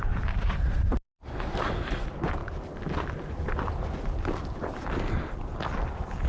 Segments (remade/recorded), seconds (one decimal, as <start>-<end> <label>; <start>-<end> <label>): 0.0-2.4 remade; 2.4-6.3 recorded